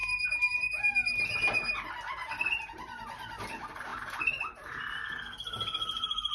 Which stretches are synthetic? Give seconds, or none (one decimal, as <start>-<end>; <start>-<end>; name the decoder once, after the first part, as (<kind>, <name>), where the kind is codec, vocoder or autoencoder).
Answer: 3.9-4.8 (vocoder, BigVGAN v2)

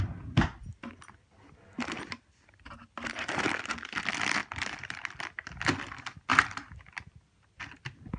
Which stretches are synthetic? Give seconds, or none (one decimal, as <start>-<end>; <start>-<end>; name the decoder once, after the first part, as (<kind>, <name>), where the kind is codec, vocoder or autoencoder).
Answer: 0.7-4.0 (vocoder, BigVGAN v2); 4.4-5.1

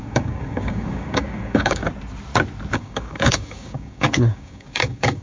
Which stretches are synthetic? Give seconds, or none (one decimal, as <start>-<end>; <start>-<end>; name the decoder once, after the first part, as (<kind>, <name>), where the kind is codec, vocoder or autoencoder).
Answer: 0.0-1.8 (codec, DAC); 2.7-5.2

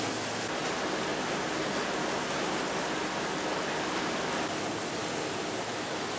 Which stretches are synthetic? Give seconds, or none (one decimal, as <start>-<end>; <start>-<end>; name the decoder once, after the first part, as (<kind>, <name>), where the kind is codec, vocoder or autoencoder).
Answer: none

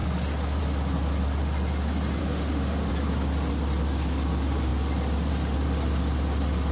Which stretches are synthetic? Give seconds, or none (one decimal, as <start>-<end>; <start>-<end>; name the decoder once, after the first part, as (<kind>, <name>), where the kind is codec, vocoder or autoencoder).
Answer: 2.2-2.9 (autoencoder, DAC-VAE)

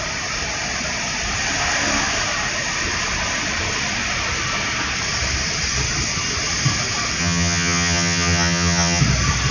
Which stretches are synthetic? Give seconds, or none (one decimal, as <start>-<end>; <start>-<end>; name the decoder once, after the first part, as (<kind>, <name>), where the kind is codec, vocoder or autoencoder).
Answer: 7.2-9.0 (vocoder, HiFi-GAN)